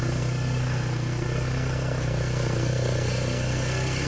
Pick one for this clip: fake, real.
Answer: fake